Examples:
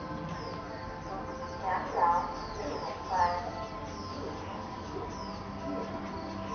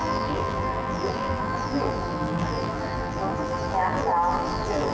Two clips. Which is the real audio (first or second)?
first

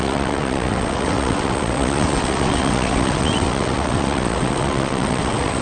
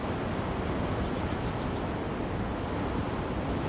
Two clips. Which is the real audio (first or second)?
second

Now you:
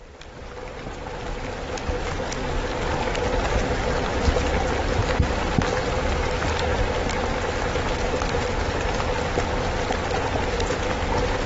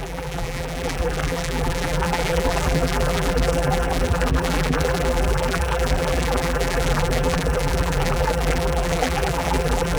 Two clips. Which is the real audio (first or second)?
first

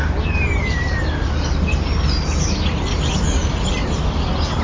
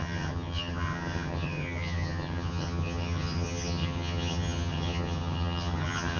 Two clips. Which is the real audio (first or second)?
first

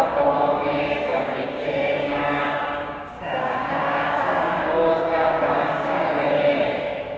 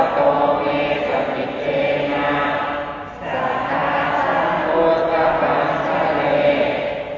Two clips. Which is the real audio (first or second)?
second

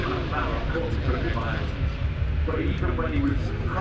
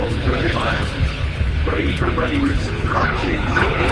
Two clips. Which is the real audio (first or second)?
first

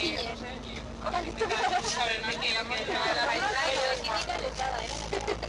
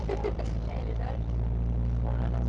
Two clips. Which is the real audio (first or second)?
first